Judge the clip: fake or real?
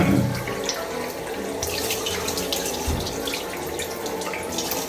real